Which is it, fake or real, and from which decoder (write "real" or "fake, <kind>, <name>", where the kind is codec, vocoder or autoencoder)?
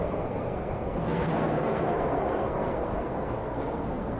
fake, codec, SNAC